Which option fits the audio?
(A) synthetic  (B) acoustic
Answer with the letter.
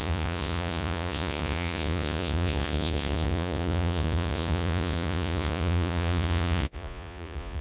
A